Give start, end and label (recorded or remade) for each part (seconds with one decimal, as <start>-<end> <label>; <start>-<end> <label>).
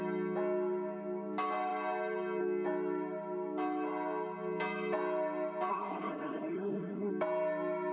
0.0-5.7 recorded; 5.7-7.1 remade; 7.1-7.9 recorded